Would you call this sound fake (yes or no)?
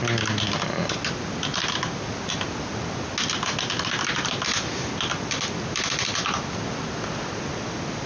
no